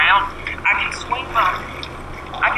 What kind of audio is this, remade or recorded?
recorded